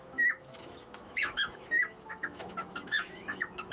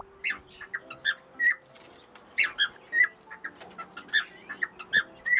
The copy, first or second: first